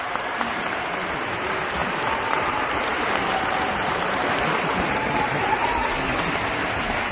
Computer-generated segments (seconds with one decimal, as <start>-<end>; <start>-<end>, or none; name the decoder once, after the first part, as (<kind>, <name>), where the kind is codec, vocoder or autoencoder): 0.0-5.8 (vocoder, BigVGAN v2)